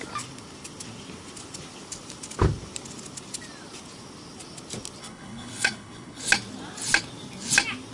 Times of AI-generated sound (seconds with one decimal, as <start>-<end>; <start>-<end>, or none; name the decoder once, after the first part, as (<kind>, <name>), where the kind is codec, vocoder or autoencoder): 5.0-6.2 (codec, HILCodec)